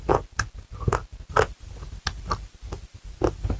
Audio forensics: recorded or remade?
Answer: recorded